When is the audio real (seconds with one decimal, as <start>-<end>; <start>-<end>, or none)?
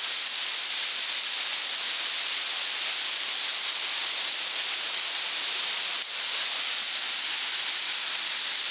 0.0-8.7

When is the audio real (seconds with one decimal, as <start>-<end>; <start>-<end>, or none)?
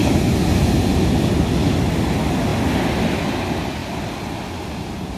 0.0-5.2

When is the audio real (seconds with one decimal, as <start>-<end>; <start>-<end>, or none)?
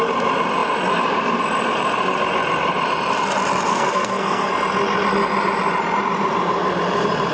0.0-3.7; 4.5-7.3